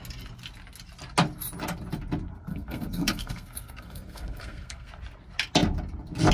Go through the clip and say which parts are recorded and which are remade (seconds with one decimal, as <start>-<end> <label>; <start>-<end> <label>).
0.0-2.5 recorded; 2.5-4.9 remade; 4.9-6.3 recorded